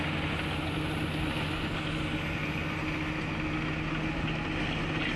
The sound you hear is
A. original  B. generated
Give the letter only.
A